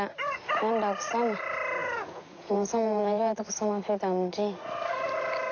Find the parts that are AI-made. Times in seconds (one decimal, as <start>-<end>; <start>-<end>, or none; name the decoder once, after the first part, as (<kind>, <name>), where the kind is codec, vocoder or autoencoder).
1.8-3.4 (vocoder, Vocos)